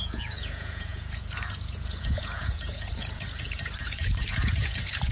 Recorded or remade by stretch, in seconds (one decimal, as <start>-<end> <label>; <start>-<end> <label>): 0.0-5.1 remade